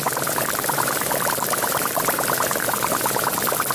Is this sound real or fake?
fake